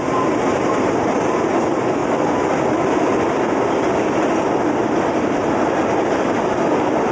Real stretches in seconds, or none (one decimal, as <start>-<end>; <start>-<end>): 0.0-7.1